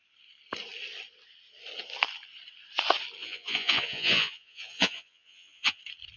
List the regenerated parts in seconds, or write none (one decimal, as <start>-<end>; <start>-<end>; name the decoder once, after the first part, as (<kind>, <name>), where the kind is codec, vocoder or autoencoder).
3.2-5.8 (vocoder, Vocos)